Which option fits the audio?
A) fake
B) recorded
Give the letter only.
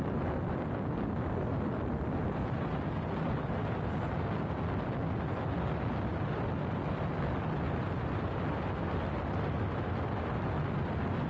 B